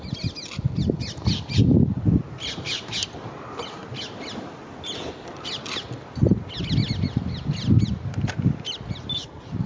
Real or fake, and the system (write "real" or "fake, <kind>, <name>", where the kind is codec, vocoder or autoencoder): real